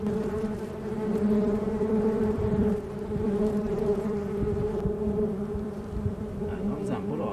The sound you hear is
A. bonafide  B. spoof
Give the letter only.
B